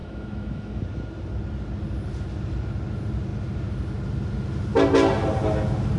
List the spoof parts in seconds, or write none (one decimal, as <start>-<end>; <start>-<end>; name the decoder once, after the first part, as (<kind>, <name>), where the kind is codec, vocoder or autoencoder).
0.0-0.8 (autoencoder, DAC-VAE)